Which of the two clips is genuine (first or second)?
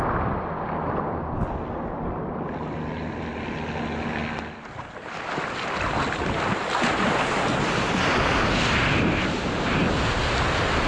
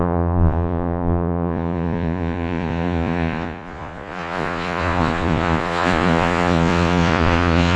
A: first